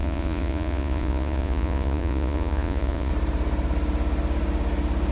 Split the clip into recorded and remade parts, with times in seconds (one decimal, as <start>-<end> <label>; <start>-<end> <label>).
0.0-3.1 remade; 3.1-5.1 recorded